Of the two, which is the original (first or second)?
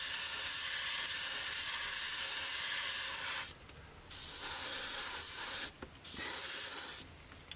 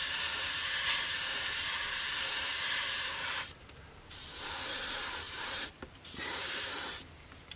first